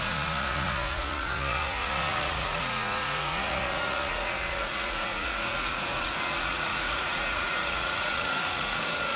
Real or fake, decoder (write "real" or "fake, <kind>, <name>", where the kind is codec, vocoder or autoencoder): fake, vocoder, Vocos